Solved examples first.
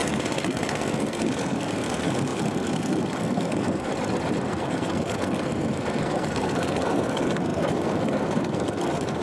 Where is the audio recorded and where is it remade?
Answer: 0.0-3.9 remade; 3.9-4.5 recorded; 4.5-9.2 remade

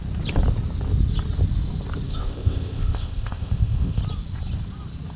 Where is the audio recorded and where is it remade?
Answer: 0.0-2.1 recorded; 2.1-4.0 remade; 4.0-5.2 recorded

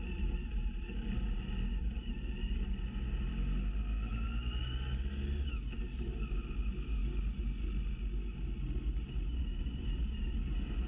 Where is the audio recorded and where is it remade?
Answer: 0.0-10.9 recorded